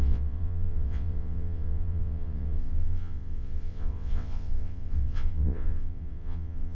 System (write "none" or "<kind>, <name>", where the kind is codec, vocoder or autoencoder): vocoder, WaveNeXt